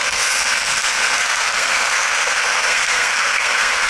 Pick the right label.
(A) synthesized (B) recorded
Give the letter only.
A